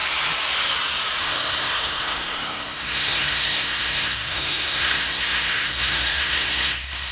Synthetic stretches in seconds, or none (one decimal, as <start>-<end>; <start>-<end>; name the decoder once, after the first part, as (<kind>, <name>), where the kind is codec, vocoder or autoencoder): 1.2-7.1 (codec, SNAC)